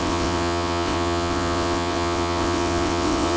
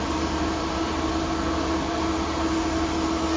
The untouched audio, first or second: second